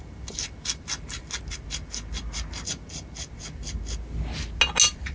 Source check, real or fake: real